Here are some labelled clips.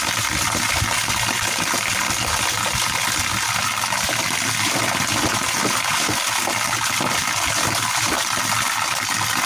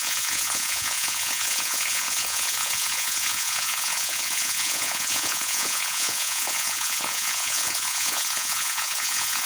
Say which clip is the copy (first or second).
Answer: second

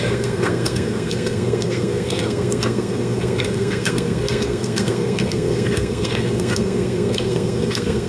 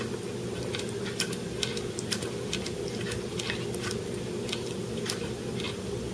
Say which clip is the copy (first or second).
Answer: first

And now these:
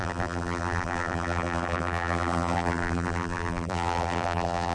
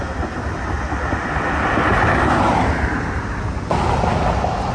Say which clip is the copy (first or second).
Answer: first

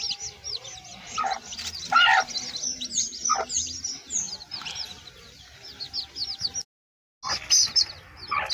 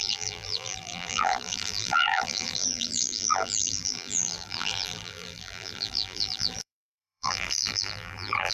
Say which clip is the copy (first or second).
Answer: second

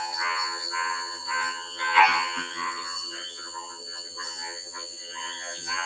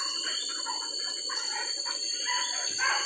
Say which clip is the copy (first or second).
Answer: first